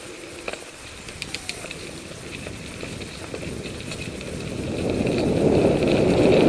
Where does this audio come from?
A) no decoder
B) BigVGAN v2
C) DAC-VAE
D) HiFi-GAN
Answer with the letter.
B